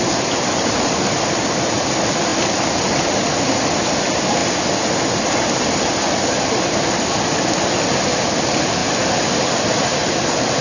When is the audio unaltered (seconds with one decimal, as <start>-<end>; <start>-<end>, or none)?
4.4-6.1; 8.8-9.5